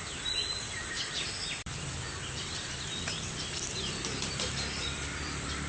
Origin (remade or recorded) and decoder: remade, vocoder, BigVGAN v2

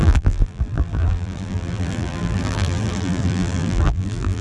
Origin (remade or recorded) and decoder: remade, vocoder, BigVGAN v2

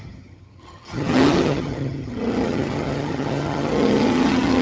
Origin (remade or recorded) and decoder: remade, vocoder, HiFi-GAN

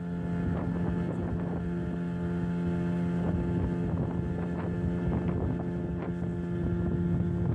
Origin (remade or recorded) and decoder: recorded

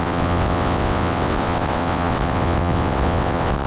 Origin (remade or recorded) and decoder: remade, vocoder, WaveNeXt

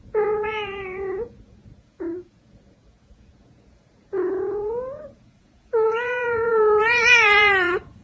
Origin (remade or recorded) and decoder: remade, vocoder, Vocos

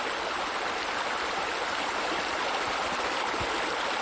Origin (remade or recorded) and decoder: recorded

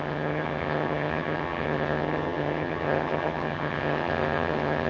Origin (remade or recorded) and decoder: remade, vocoder, HiFi-GAN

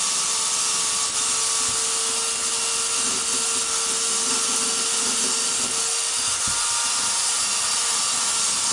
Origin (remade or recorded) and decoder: recorded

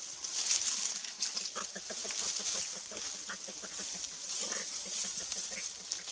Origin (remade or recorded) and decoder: recorded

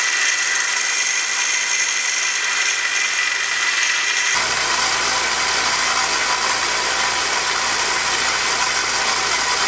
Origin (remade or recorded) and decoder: recorded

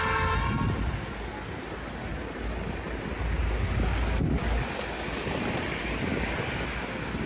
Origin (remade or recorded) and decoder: recorded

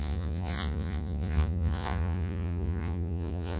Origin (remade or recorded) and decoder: remade, vocoder, Vocos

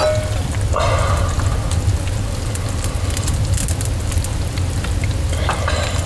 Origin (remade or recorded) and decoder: recorded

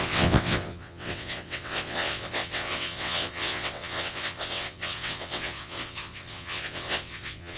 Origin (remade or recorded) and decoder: remade, vocoder, WaveNeXt